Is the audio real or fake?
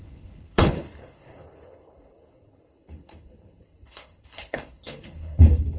fake